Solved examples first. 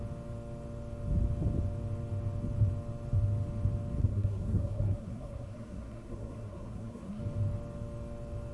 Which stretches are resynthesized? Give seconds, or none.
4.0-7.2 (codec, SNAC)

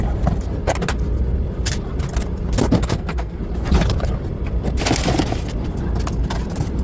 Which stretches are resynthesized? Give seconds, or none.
2.8-3.4 (codec, SNAC)

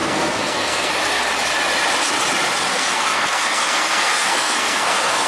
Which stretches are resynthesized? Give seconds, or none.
0.0-0.9 (codec, SNAC); 2.7-5.3

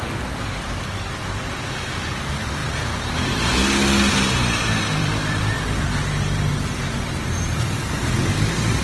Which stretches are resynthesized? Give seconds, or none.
5.0-7.4 (vocoder, BigVGAN v2)

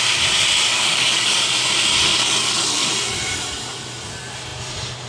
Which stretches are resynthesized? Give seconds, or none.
0.7-1.4 (codec, DAC); 2.1-2.9

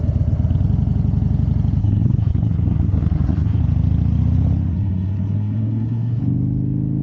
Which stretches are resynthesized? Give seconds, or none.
1.8-3.6 (codec, SNAC); 4.7-6.2